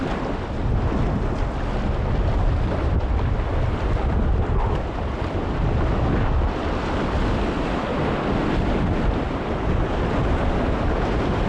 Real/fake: real